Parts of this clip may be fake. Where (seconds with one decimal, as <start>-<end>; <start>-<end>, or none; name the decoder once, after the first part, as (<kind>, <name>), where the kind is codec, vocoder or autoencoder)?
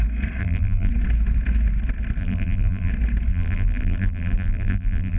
0.4-0.9 (vocoder, BigVGAN v2); 2.2-2.9; 3.3-5.2